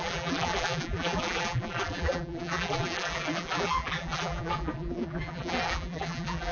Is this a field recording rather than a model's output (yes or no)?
no